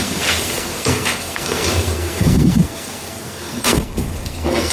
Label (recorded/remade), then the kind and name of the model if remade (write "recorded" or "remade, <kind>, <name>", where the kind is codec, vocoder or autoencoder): remade, codec, SNAC